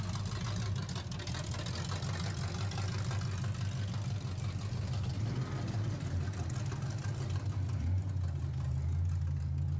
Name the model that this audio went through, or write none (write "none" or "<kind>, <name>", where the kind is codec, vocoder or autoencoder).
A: none